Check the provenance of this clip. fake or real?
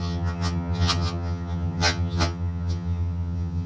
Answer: fake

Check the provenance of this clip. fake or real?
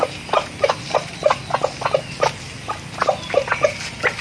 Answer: real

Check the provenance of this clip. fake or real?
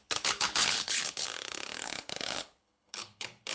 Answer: fake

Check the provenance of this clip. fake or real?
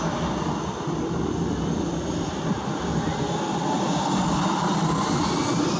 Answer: real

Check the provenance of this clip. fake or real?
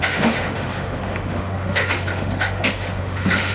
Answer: fake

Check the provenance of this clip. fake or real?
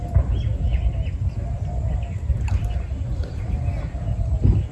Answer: real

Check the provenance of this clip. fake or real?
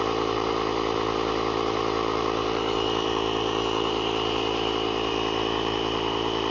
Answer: fake